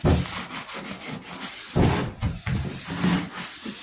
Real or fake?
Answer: real